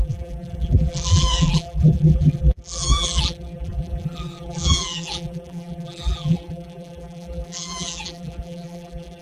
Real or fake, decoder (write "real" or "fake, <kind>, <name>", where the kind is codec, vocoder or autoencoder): fake, vocoder, BigVGAN v2